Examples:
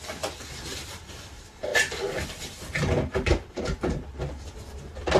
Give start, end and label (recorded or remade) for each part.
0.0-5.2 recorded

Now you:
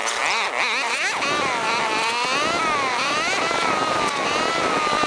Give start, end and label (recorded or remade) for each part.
0.0-5.1 recorded

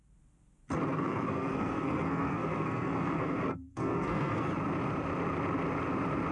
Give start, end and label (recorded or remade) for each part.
0.0-0.9 recorded; 0.9-4.5 remade; 4.5-6.3 recorded

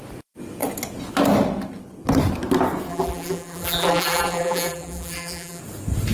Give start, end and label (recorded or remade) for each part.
0.0-2.9 recorded; 2.9-5.6 remade; 5.6-6.1 recorded

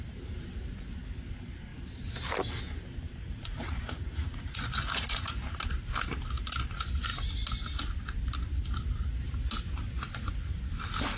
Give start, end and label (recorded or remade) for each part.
0.0-3.2 recorded; 3.2-5.3 remade; 5.3-11.2 recorded

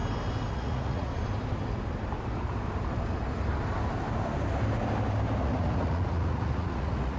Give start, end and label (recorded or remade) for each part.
0.0-0.5 recorded; 0.5-1.1 remade; 1.1-5.4 recorded; 5.4-7.2 remade

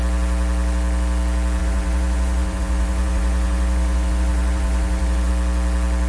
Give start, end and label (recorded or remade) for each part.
0.0-1.6 recorded; 1.6-5.3 remade; 5.3-6.1 recorded

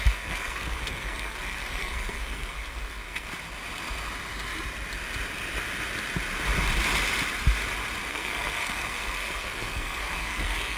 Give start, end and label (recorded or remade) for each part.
0.0-3.3 remade; 3.3-8.1 recorded; 8.1-10.8 remade